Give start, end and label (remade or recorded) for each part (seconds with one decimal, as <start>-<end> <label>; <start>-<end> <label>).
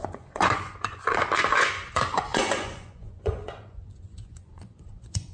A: 0.0-5.3 remade